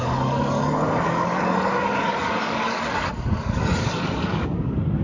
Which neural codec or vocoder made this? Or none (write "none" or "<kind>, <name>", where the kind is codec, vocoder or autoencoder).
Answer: codec, DAC